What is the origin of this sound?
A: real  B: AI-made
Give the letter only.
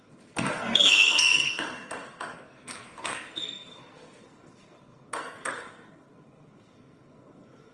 B